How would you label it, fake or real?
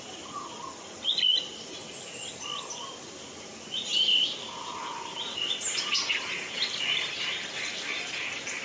real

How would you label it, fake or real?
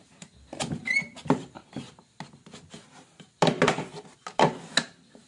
real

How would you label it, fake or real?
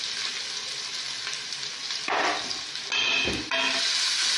real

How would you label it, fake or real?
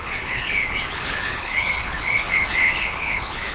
fake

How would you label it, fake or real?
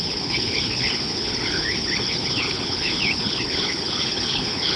fake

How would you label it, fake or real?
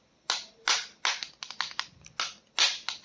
real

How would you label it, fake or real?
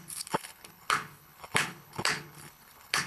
fake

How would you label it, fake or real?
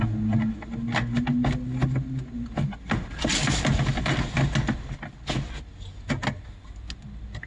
real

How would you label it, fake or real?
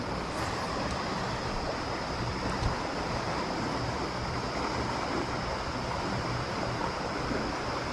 real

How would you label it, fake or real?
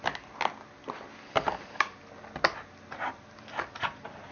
real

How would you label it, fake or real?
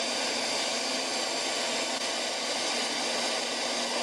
real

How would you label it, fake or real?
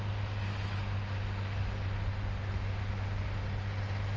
real